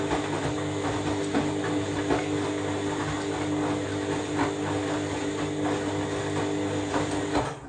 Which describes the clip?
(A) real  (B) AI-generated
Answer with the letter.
A